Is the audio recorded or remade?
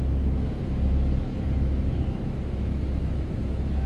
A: remade